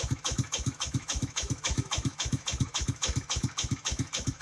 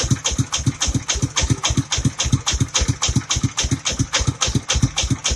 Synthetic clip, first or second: first